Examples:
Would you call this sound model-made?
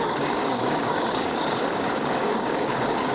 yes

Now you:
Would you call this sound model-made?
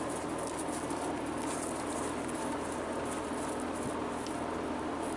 no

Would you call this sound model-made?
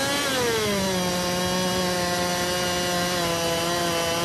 no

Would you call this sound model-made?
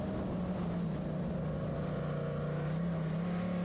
no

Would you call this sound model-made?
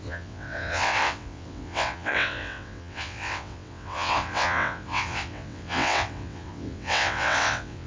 yes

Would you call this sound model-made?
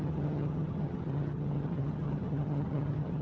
yes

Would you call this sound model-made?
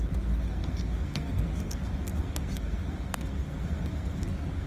yes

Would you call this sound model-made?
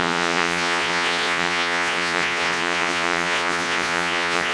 yes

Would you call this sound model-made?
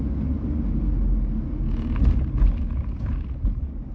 no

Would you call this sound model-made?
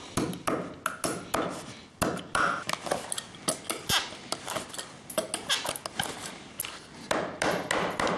no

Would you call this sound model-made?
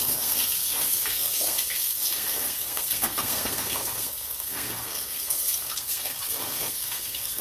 yes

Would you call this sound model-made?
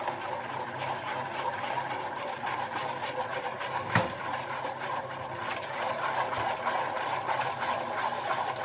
no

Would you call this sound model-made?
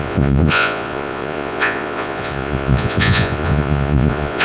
yes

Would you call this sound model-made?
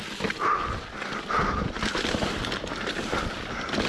no